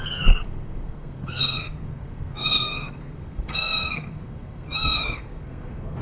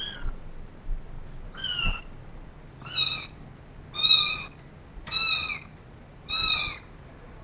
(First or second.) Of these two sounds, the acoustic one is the second